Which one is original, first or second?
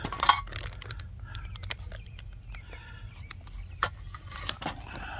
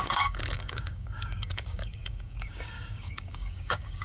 first